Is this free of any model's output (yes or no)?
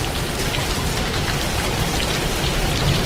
yes